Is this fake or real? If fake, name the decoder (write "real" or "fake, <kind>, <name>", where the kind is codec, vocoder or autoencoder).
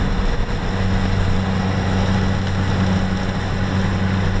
real